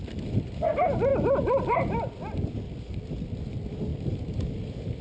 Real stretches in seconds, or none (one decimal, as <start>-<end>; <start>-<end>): 0.0-5.0

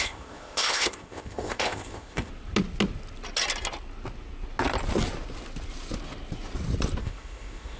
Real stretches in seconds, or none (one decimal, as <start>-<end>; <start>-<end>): 2.3-7.0

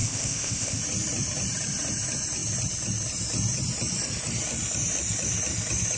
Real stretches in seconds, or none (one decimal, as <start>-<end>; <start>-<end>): 0.8-6.0

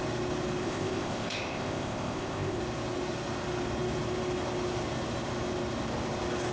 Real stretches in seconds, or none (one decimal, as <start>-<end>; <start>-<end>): 0.0-0.6; 2.6-6.5

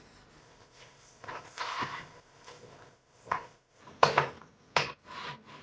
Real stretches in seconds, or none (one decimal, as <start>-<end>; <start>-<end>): 0.0-0.4; 3.8-5.6